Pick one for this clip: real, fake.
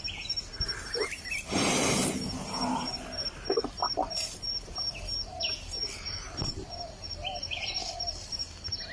real